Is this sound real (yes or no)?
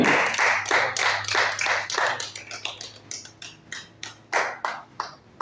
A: yes